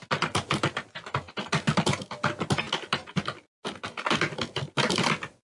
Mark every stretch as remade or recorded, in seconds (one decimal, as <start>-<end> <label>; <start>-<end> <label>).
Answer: 0.0-5.5 recorded

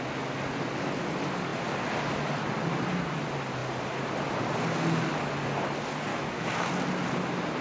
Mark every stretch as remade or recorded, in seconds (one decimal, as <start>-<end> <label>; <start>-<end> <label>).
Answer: 0.0-6.1 recorded; 6.1-6.7 remade; 6.7-7.6 recorded

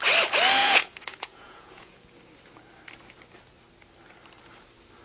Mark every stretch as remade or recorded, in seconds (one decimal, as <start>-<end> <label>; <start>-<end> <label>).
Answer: 0.0-0.6 recorded; 0.6-1.9 remade; 1.9-5.0 recorded

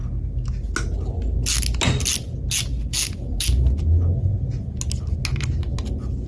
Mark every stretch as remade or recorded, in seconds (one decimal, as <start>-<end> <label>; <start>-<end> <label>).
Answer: 0.0-6.3 recorded

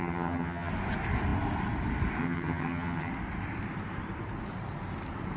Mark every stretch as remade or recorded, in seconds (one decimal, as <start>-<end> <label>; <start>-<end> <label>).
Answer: 0.0-0.7 remade; 0.7-2.2 recorded; 2.2-3.1 remade; 3.1-5.4 recorded

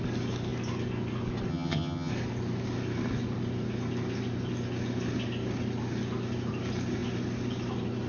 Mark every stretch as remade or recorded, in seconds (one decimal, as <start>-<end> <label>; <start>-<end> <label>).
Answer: 0.0-1.5 recorded; 1.5-2.1 remade; 2.1-8.1 recorded

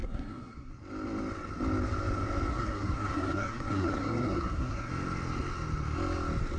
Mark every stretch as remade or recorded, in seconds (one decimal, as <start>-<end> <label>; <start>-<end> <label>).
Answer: 0.0-0.7 remade; 0.7-2.5 recorded; 2.5-4.9 remade; 4.9-6.6 recorded